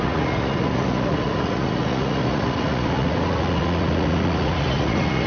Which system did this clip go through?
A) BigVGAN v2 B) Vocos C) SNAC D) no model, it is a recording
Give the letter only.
B